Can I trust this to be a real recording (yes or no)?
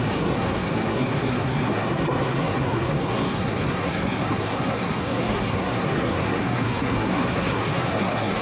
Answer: no